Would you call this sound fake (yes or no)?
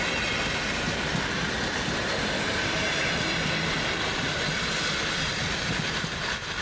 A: yes